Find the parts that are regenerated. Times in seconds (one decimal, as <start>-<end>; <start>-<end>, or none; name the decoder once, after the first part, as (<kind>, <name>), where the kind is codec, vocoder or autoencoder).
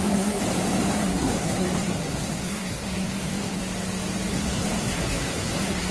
0.0-0.4 (codec, SNAC); 0.9-3.6; 4.3-5.9